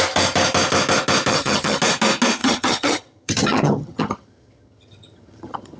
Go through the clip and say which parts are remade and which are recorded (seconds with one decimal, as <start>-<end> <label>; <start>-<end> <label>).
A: 0.0-1.3 recorded; 1.3-1.8 remade; 1.8-2.4 recorded; 2.4-5.8 remade